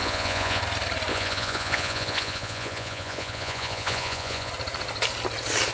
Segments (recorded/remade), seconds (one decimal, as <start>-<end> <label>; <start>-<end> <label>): 0.0-0.6 remade; 0.6-1.1 recorded; 1.1-4.5 remade; 4.5-5.7 recorded